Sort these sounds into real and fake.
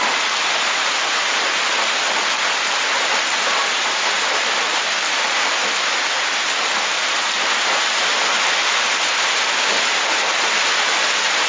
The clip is real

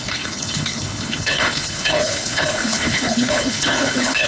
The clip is fake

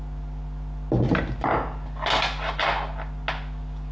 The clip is real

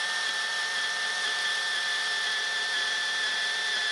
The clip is real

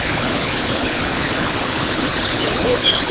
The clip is fake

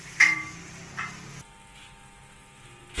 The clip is real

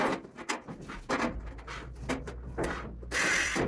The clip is real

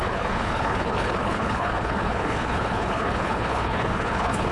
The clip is fake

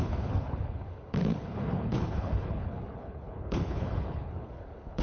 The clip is fake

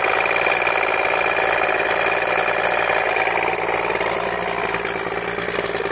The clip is real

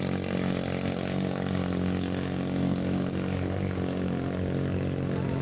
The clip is real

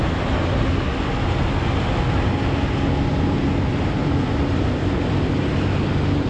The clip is real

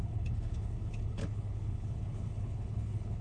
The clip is fake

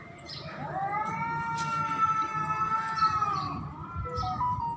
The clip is real